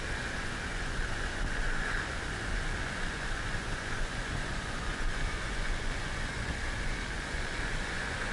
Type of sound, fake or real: fake